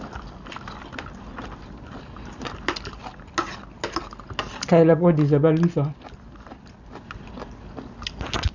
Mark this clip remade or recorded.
recorded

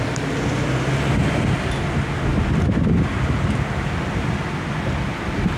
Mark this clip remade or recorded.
recorded